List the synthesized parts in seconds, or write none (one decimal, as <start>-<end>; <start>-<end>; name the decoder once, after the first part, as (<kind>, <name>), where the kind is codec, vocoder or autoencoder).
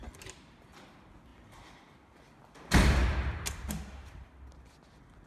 none